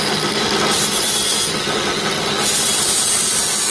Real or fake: real